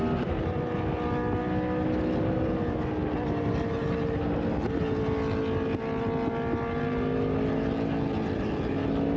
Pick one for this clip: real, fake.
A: real